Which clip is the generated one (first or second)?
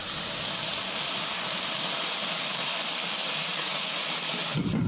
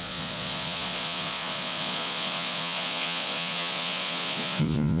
second